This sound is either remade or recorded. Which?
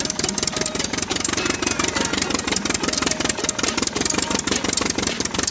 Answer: recorded